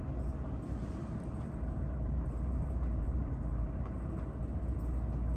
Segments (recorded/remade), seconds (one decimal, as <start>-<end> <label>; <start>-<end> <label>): 0.0-1.0 recorded; 1.0-4.2 remade; 4.2-5.4 recorded